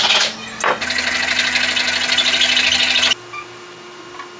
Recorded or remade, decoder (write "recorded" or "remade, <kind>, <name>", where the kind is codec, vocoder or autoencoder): recorded